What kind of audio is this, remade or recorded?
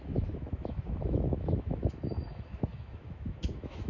remade